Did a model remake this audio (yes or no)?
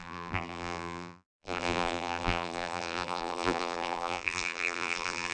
yes